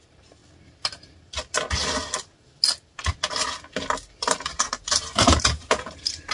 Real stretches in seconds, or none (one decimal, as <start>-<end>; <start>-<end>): 0.4-4.2